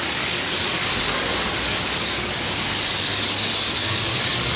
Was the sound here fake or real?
fake